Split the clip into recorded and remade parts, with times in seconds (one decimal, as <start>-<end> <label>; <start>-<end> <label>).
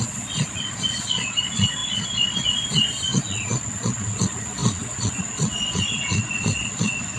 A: 0.0-7.2 remade